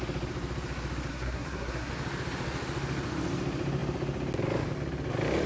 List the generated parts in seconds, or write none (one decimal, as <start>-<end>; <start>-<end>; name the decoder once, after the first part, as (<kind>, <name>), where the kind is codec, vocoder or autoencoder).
1.1-1.9 (codec, SNAC)